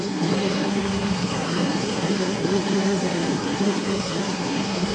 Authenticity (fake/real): fake